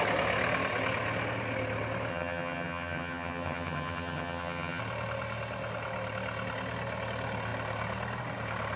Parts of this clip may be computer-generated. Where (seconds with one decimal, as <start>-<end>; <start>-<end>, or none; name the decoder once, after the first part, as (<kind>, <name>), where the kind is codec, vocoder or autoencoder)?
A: 2.1-4.8 (vocoder, HiFi-GAN)